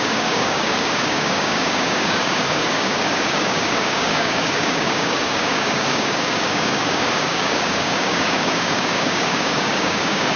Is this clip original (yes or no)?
no